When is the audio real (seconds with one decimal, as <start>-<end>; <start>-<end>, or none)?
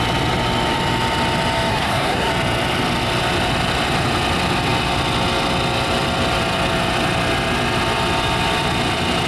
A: 0.0-1.7; 2.3-9.3